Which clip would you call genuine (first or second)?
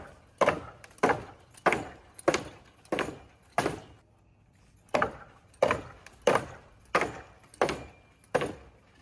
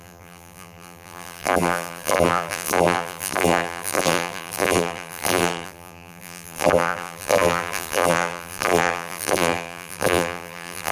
first